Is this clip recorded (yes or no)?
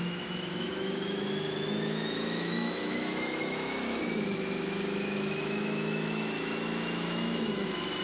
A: no